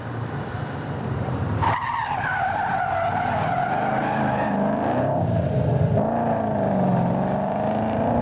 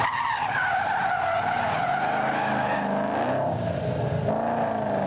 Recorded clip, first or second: second